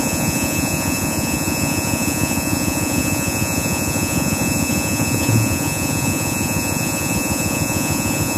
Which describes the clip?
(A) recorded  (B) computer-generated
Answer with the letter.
B